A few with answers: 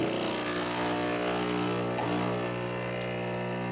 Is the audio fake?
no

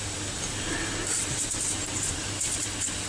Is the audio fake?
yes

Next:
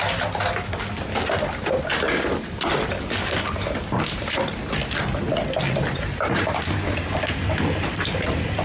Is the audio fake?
no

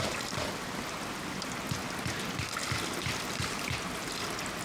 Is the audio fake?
no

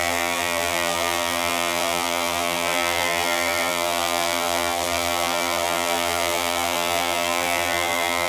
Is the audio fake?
yes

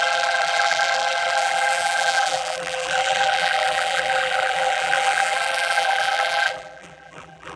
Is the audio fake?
yes